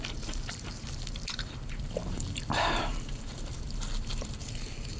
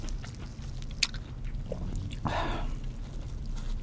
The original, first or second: second